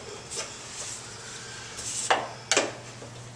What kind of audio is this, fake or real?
real